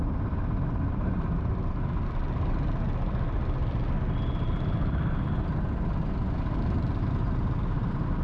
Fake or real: real